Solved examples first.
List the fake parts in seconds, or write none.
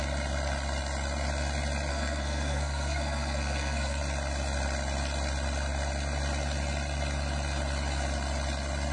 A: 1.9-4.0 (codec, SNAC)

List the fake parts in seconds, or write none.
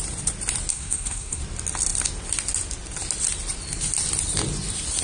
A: 0.7-1.4 (codec, SNAC)